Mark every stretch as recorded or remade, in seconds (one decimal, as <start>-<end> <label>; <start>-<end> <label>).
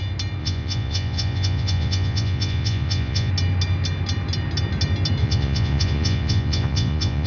0.0-0.4 recorded; 0.4-3.3 remade; 3.3-5.2 recorded; 5.2-7.3 remade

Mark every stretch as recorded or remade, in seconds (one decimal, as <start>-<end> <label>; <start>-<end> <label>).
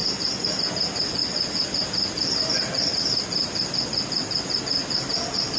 0.0-5.6 recorded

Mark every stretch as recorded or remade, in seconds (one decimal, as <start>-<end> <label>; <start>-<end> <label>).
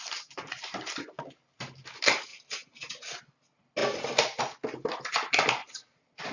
0.0-3.8 recorded; 3.8-4.4 remade; 4.4-5.6 recorded; 5.6-6.3 remade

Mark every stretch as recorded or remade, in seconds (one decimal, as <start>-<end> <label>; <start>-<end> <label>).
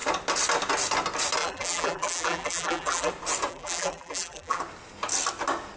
0.0-1.4 recorded; 1.4-3.1 remade; 3.1-3.5 recorded; 3.5-4.6 remade; 4.6-5.8 recorded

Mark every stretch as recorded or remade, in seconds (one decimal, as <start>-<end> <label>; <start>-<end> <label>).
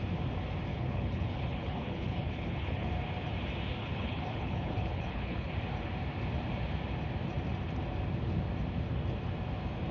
0.0-0.7 recorded; 0.7-2.9 remade; 2.9-3.8 recorded; 3.8-5.5 remade; 5.5-9.9 recorded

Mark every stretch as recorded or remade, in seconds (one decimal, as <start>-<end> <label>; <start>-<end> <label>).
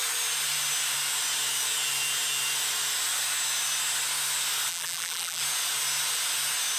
0.0-4.7 recorded; 4.7-5.4 remade; 5.4-6.8 recorded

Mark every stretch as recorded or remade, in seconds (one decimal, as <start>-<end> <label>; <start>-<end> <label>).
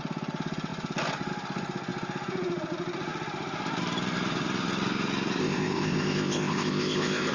0.0-5.4 recorded; 5.4-7.3 remade